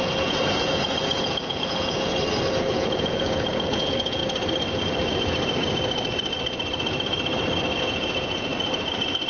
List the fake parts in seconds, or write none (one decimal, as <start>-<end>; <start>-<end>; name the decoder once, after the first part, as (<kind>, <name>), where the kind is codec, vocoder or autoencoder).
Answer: 0.0-2.1 (vocoder, Vocos); 2.6-4.2; 7.8-8.5